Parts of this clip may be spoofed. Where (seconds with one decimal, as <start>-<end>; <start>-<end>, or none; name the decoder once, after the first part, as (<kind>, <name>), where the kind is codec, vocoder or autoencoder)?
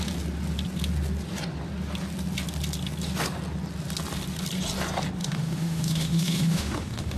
5.2-7.2 (autoencoder, DAC-VAE)